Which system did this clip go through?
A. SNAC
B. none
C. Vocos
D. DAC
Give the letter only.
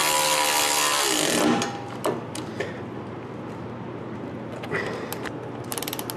B